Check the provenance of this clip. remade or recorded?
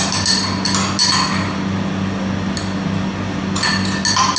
recorded